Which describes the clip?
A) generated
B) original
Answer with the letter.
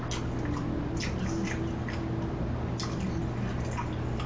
B